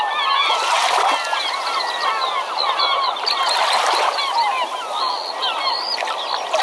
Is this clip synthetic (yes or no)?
no